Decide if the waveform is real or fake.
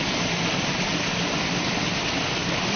fake